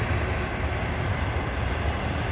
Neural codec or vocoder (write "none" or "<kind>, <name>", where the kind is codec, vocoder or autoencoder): none